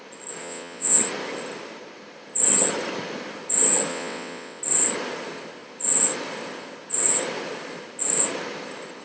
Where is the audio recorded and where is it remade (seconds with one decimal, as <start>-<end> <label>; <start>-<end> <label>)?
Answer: 0.0-0.4 recorded; 0.4-1.0 remade; 1.0-3.9 recorded; 3.9-4.6 remade; 4.6-9.0 recorded

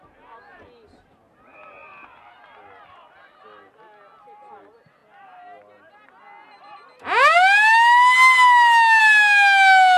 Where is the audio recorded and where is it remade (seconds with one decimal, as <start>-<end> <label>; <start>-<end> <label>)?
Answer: 0.0-10.0 recorded

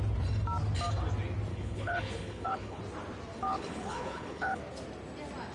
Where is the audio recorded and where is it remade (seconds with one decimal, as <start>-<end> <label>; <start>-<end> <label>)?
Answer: 0.0-1.5 recorded; 1.5-2.8 remade; 2.8-3.5 recorded; 3.5-4.6 remade; 4.6-5.5 recorded

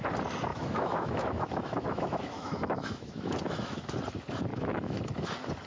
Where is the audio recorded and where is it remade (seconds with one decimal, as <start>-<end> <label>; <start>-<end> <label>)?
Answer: 0.0-0.5 recorded; 0.5-3.9 remade; 3.9-4.5 recorded; 4.5-5.0 remade; 5.0-5.7 recorded

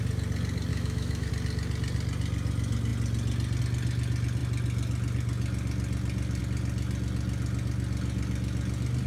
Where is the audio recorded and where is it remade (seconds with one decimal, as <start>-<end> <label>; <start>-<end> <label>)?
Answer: 0.0-0.7 recorded; 0.7-1.3 remade; 1.3-9.1 recorded

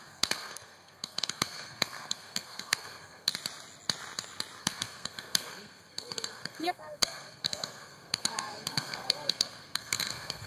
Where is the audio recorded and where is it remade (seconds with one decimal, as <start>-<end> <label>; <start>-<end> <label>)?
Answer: 0.0-3.3 remade; 3.3-4.6 recorded; 4.6-10.5 remade